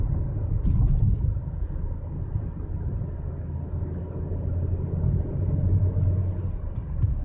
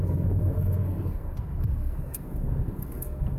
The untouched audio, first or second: first